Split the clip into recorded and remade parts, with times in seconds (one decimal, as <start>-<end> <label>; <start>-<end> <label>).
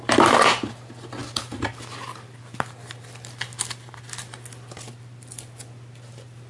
0.0-1.2 recorded; 1.2-3.6 remade; 3.6-6.5 recorded